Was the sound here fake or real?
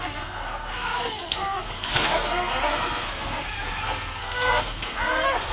fake